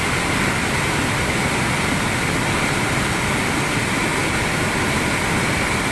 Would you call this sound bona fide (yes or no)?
yes